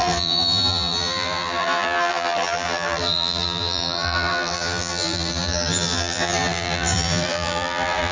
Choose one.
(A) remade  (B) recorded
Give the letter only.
A